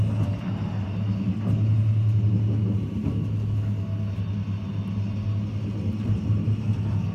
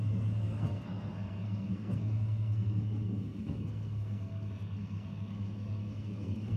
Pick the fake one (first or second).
second